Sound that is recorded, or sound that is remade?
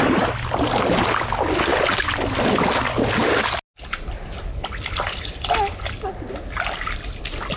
recorded